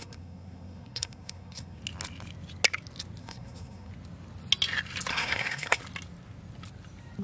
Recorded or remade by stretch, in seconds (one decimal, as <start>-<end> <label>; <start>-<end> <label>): 0.0-1.8 remade; 1.8-3.2 recorded; 3.2-3.9 remade; 3.9-5.1 recorded; 5.1-5.8 remade; 5.8-7.2 recorded